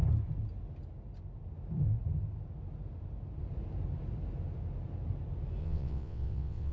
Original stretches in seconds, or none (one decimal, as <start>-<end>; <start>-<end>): 0.0-5.6